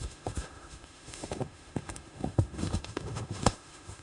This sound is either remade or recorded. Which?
remade